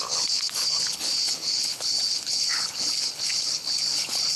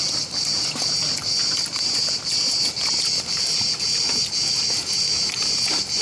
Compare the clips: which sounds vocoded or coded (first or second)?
first